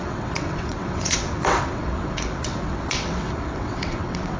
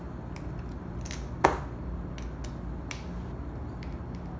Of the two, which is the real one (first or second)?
second